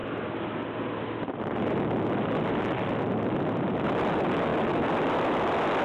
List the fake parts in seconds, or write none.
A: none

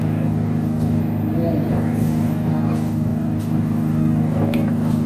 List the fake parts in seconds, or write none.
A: 0.0-1.0 (codec, DAC); 1.7-5.1